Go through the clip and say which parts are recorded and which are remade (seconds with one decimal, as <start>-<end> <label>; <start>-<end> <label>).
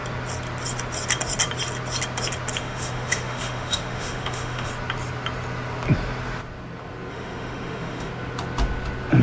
0.0-2.6 recorded; 2.6-4.7 remade; 4.7-7.1 recorded; 7.1-8.1 remade; 8.1-9.2 recorded